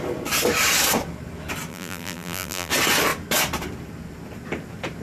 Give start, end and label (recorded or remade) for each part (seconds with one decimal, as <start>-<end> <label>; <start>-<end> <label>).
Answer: 0.0-1.7 recorded; 1.7-2.7 remade; 2.7-5.0 recorded